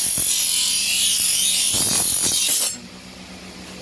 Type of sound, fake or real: real